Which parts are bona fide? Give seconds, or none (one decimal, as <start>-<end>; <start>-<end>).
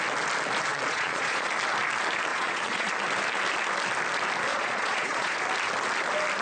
0.0-0.7; 1.5-2.3; 2.9-4.5; 5.4-6.4